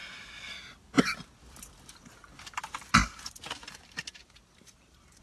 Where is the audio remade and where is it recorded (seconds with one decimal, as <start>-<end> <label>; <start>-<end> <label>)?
0.0-3.0 recorded; 3.0-5.2 remade

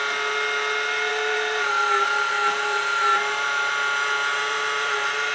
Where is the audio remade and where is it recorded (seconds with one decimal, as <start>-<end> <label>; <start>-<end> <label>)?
0.0-1.1 recorded; 1.1-3.7 remade; 3.7-4.3 recorded; 4.3-5.3 remade